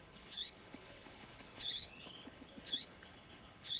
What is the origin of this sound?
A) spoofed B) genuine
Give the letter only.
A